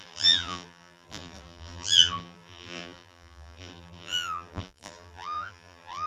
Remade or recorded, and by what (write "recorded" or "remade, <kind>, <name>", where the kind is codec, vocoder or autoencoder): remade, vocoder, BigVGAN v2